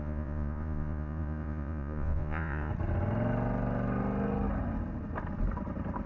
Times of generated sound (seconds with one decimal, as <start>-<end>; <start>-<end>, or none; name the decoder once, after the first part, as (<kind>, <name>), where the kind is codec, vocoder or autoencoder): 0.0-2.7 (vocoder, Vocos)